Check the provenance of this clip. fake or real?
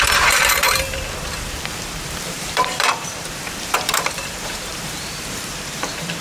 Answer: fake